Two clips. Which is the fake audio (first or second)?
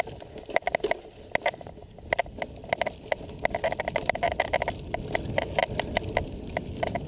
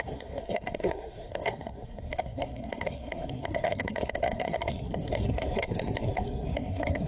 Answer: second